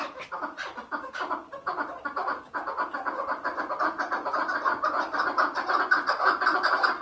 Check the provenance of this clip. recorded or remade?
recorded